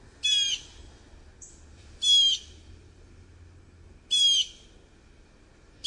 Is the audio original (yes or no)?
yes